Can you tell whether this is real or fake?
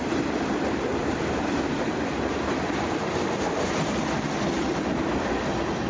fake